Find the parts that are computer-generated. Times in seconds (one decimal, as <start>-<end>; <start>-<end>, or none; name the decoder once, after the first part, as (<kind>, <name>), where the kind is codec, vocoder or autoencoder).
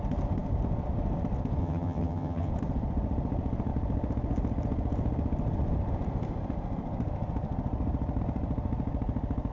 1.6-2.5 (vocoder, HiFi-GAN)